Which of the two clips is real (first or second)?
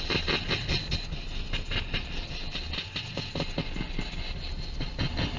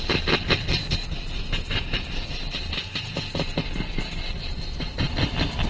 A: first